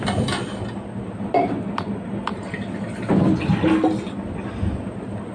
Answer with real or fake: real